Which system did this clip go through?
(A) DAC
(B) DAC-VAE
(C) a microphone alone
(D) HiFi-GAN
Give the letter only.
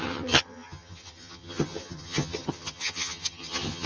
D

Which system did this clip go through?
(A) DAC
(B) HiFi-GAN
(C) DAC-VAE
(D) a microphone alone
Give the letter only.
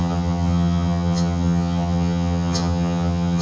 B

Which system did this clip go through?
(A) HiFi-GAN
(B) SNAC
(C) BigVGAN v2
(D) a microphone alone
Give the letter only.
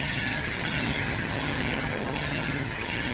A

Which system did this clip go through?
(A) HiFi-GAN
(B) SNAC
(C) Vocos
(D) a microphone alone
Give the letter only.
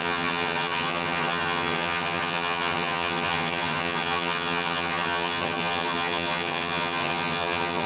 A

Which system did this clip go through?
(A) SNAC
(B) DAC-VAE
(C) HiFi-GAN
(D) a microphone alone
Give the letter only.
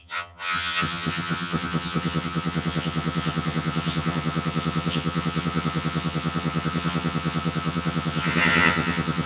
C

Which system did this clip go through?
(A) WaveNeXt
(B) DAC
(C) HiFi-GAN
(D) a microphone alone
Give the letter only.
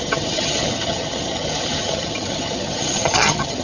C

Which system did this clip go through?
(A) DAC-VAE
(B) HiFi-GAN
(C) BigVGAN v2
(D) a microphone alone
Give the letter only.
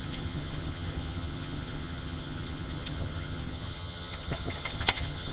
B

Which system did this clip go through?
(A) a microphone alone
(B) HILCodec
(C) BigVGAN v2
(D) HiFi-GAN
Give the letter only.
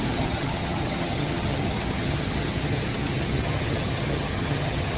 D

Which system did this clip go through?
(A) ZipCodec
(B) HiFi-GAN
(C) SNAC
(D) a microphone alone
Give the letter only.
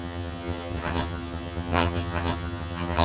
B